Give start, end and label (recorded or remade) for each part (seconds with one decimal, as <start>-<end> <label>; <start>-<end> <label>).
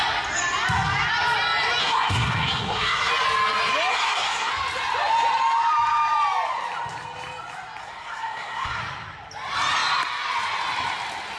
0.0-1.8 recorded; 1.8-3.1 remade; 3.1-3.9 recorded; 3.9-4.5 remade; 4.5-7.8 recorded; 7.8-8.8 remade; 8.8-11.4 recorded